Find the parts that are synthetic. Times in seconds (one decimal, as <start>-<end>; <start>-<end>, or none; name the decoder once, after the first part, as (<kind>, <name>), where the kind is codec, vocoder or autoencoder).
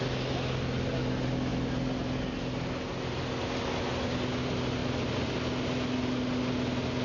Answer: none